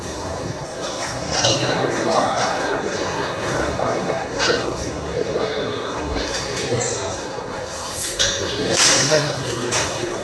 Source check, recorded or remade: remade